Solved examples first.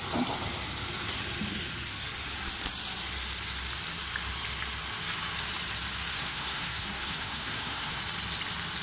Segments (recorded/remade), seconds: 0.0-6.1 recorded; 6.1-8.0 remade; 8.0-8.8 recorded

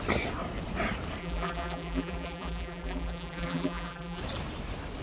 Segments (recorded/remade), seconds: 0.0-1.2 recorded; 1.2-4.2 remade; 4.2-5.0 recorded

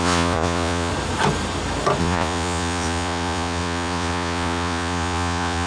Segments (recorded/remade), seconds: 0.0-0.9 remade; 0.9-2.0 recorded; 2.0-5.7 remade

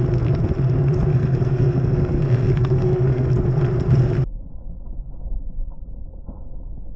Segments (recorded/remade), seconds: 0.0-1.1 recorded; 1.1-3.3 remade; 3.3-7.0 recorded

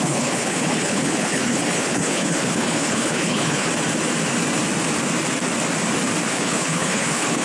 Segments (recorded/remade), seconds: 0.0-3.7 remade; 3.7-6.3 recorded; 6.3-7.4 remade

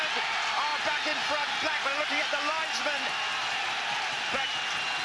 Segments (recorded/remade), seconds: 0.0-5.0 remade

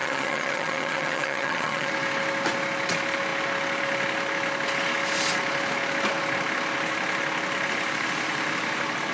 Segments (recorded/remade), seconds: 0.0-1.9 remade; 1.9-9.1 recorded

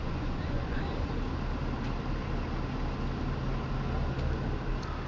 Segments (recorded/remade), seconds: 0.0-0.8 remade; 0.8-5.1 recorded